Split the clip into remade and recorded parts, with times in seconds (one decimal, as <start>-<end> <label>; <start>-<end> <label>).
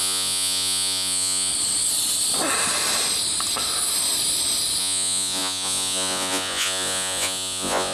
0.0-1.5 remade; 1.5-4.8 recorded; 4.8-7.9 remade